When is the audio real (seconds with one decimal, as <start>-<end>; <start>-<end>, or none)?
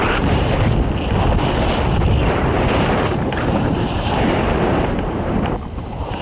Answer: 0.5-2.2; 5.5-6.2